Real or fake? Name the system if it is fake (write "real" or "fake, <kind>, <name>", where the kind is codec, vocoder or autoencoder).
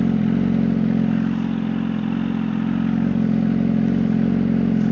real